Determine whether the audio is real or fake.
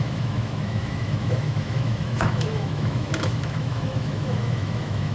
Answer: fake